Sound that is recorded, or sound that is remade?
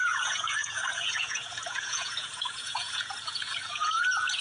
remade